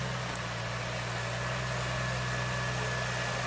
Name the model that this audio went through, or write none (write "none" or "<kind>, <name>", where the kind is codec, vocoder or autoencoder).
none